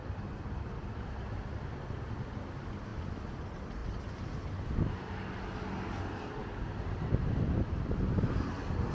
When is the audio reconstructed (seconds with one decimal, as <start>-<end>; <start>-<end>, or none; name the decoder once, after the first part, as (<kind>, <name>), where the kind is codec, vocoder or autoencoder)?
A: 0.0-1.4 (vocoder, BigVGAN v2); 2.9-3.4; 6.4-7.6